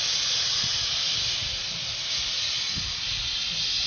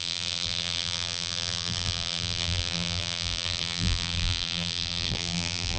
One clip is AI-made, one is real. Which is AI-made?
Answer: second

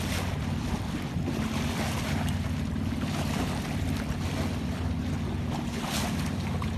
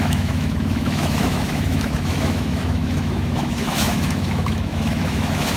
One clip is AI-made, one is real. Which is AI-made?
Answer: second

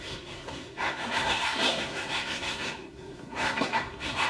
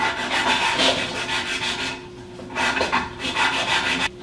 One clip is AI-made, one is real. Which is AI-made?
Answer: first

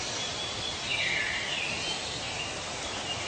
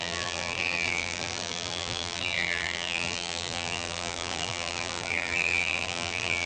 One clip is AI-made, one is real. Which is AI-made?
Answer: second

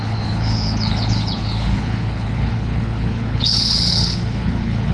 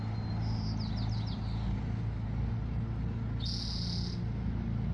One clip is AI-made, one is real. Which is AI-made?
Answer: first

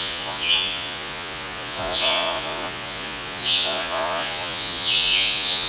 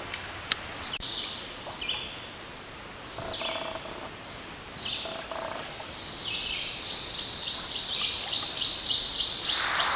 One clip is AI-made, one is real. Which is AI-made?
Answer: first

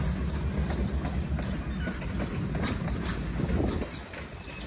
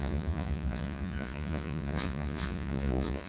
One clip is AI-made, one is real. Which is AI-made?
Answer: second